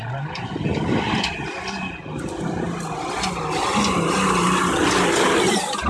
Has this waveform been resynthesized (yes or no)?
no